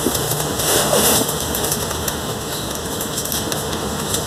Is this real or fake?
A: fake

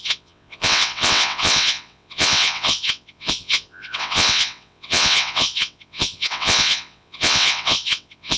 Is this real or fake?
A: fake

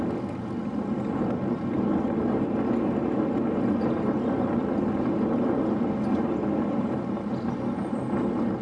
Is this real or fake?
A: real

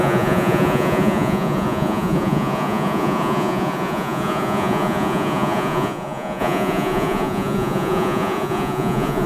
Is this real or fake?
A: fake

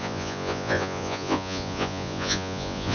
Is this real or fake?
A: fake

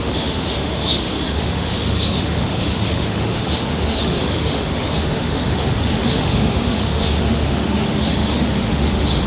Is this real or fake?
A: fake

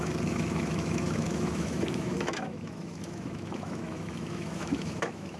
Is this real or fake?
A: fake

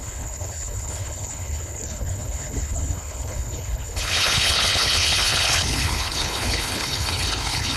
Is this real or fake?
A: fake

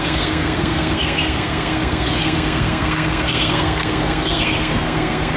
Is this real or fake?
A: fake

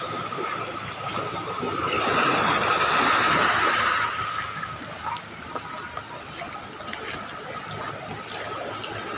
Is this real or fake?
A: real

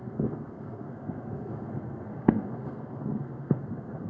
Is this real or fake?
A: fake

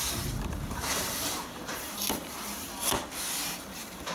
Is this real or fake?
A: fake